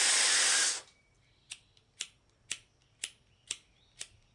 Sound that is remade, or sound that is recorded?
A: recorded